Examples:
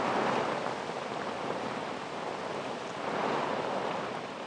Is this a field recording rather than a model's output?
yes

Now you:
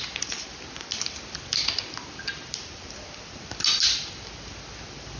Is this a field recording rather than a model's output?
yes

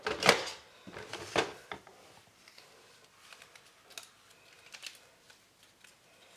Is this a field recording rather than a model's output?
yes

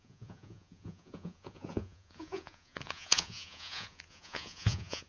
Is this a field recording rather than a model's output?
no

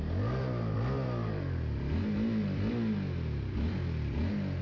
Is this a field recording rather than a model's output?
yes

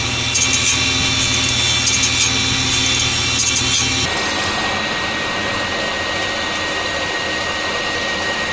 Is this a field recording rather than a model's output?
yes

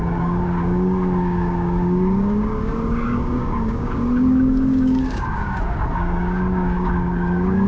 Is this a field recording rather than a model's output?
no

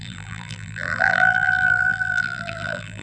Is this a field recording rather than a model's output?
no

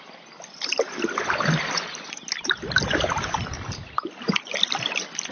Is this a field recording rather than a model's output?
yes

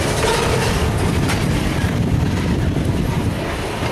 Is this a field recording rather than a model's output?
no